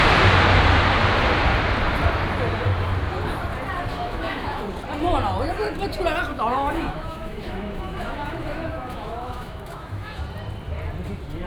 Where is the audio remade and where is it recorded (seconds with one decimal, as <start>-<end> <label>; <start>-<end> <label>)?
0.0-3.9 recorded; 3.9-4.6 remade; 4.6-6.3 recorded; 6.3-10.2 remade; 10.2-11.5 recorded